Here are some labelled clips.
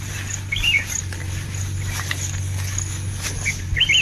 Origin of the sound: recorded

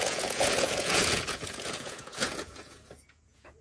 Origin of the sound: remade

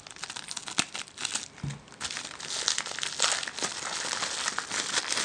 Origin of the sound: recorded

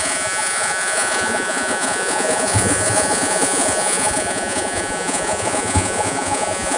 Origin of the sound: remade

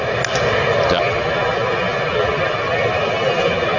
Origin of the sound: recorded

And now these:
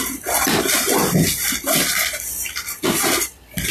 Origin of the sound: remade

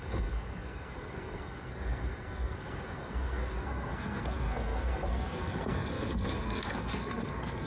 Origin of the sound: remade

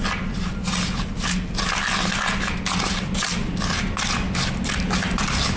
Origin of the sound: recorded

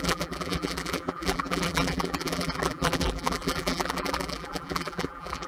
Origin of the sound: remade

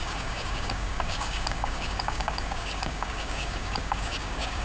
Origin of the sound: remade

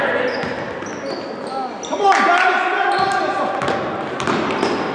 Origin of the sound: recorded